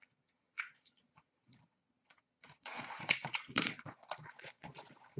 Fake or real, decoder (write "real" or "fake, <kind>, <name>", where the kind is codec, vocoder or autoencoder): fake, vocoder, Vocos